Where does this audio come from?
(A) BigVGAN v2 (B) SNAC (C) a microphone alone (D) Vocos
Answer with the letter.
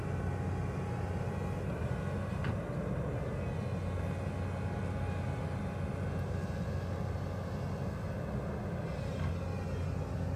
C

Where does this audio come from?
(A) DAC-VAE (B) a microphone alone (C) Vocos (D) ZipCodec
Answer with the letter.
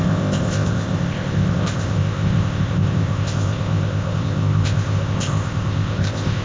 D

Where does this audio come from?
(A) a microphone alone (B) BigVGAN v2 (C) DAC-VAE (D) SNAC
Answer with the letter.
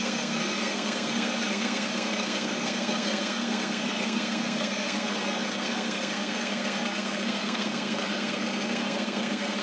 D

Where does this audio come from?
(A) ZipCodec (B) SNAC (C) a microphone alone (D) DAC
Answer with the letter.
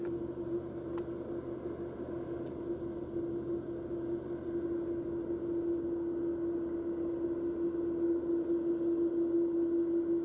C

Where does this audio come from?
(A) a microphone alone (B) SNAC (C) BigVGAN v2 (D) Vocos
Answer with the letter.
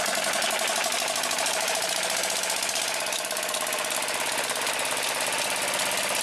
A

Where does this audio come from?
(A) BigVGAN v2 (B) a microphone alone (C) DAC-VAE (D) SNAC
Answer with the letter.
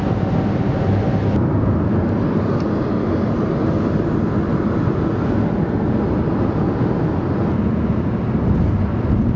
B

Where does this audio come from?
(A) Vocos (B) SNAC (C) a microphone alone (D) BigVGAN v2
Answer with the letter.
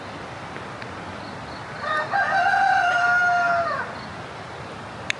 C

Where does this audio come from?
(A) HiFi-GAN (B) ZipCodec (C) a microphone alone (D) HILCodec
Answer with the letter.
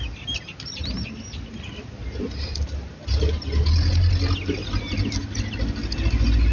C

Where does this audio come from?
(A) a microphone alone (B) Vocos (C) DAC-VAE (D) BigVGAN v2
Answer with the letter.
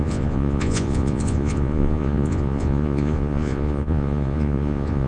B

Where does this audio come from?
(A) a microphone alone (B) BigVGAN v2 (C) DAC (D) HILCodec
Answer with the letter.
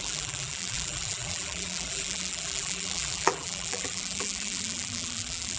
B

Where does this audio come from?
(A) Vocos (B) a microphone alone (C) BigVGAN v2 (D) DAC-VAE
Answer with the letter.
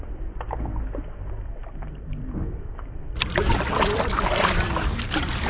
C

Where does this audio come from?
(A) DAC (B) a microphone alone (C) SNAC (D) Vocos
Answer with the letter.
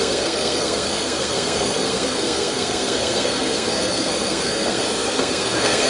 C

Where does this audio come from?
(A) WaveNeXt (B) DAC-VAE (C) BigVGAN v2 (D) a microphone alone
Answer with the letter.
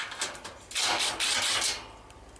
D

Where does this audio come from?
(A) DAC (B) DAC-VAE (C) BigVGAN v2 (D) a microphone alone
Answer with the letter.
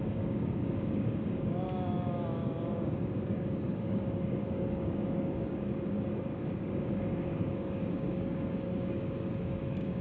A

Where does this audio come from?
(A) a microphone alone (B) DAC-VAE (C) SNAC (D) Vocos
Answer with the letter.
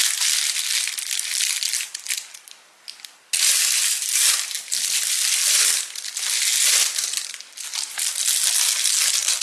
A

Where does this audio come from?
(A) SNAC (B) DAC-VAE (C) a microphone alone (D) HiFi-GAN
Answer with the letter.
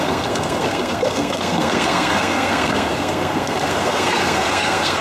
A